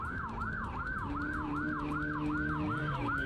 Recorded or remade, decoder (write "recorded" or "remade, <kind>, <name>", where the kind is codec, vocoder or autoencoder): recorded